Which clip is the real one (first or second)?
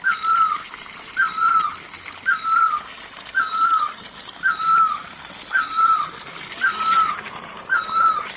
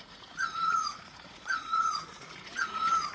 first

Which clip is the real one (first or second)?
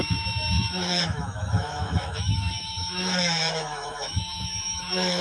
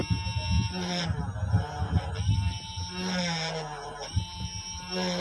second